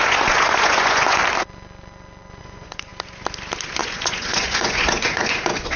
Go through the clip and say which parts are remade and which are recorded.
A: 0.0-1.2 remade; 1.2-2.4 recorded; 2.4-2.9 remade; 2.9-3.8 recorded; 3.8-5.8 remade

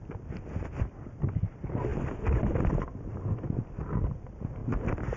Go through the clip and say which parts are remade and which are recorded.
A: 0.0-5.2 recorded